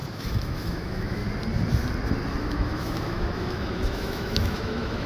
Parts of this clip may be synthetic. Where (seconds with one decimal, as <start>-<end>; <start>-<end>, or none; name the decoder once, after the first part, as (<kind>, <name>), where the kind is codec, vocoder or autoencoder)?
0.0-1.2 (autoencoder, DAC-VAE); 2.4-5.1